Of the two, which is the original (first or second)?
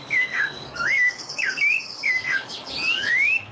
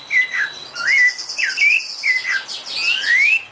second